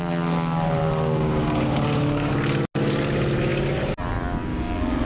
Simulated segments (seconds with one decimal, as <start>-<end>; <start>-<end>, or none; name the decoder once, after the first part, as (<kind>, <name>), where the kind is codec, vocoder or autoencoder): 0.8-2.3 (codec, DAC); 4.5-5.1